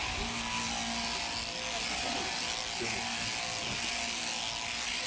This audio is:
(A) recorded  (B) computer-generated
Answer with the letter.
A